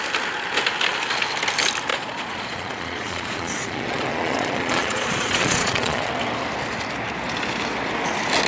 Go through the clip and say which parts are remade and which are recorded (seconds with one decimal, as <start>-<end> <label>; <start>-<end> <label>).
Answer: 0.0-1.9 recorded; 1.9-6.1 remade; 6.1-8.5 recorded